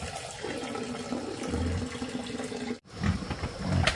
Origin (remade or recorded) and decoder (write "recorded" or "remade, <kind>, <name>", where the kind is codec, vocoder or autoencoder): recorded